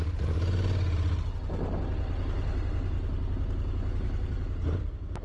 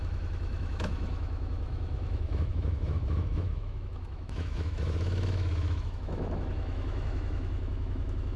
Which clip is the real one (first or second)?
first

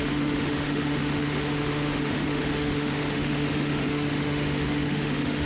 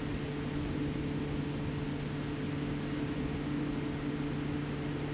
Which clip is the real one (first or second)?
second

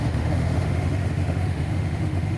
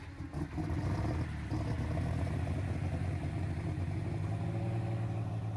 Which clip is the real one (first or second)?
second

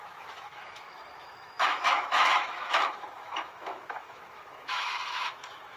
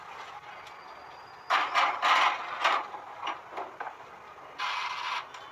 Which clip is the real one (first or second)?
second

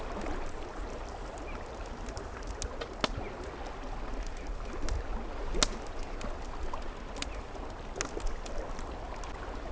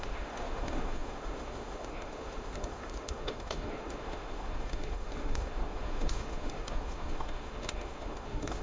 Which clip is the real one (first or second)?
first